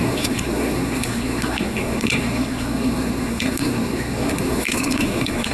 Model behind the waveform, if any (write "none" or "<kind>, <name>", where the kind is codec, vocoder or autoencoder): codec, SNAC